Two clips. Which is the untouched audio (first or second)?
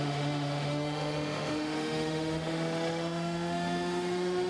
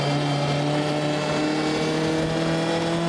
second